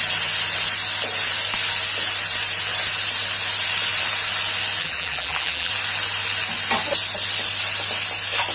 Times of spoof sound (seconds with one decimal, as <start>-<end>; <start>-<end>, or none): 4.8-5.7